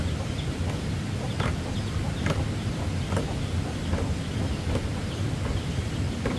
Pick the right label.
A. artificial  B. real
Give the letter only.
B